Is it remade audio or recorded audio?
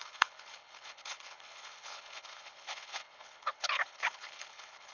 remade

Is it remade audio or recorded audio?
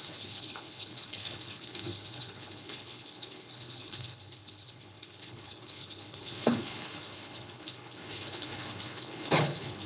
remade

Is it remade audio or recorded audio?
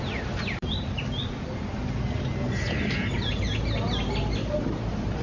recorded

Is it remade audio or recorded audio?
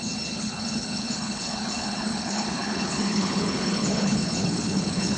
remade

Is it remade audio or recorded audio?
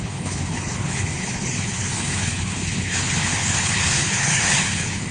remade